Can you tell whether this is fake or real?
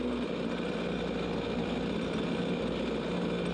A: real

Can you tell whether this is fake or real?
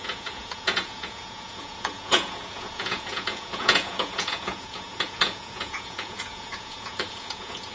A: fake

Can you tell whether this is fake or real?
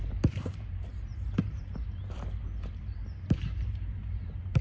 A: fake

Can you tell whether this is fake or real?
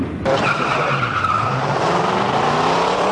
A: fake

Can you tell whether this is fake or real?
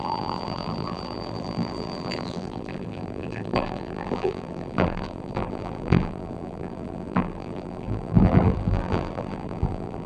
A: fake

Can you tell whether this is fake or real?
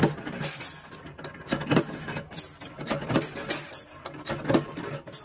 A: real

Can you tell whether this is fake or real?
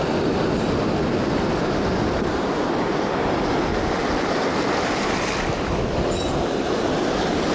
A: real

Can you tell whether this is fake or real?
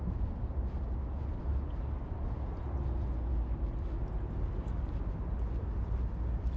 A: real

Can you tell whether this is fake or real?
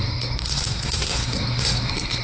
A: fake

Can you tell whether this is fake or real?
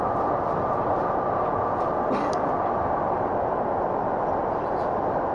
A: real